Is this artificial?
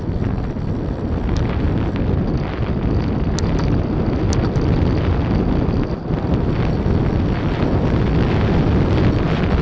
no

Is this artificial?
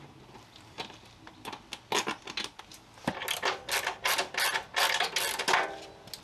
no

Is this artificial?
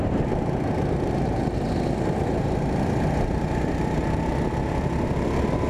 no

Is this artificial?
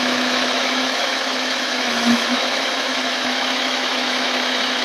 yes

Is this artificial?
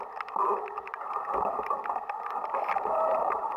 no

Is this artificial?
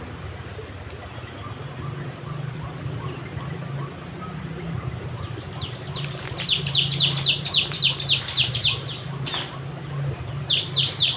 no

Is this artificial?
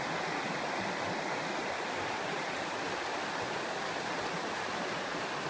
no